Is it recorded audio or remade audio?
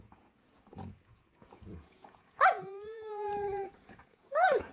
remade